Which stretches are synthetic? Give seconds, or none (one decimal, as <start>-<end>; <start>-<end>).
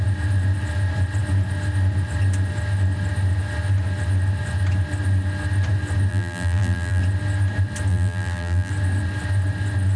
6.1-7.0; 7.9-8.7